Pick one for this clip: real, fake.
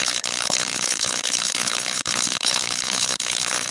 fake